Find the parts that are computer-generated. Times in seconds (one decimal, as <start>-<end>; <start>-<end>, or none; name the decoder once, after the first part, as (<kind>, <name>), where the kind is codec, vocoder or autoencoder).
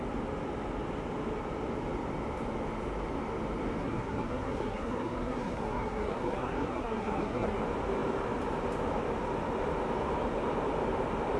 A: 3.8-7.6 (codec, SNAC)